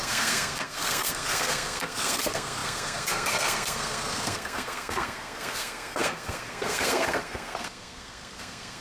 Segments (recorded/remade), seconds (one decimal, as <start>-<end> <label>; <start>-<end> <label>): 0.0-8.8 remade